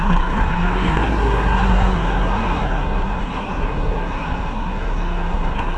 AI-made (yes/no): yes